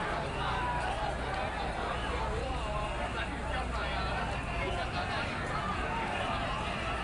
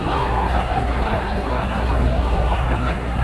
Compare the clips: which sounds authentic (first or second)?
first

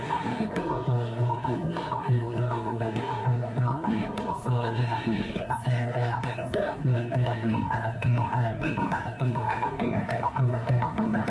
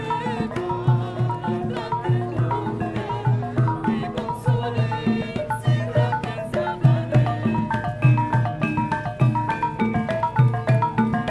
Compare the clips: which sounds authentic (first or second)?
second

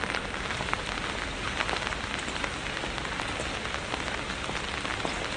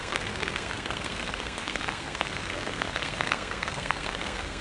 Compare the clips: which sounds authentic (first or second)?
first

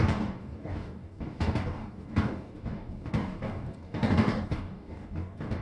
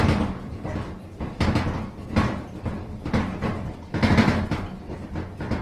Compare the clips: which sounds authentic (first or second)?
second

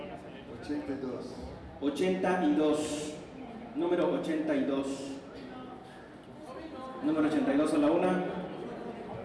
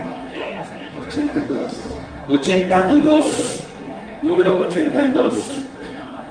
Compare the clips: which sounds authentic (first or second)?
first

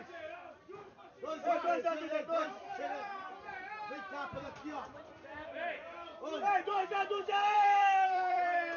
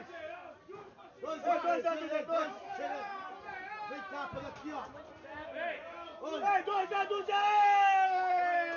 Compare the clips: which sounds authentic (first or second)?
second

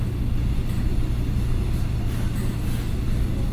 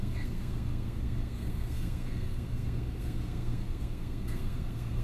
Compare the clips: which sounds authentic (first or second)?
first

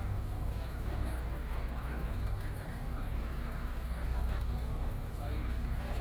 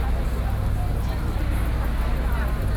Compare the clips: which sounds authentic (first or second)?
second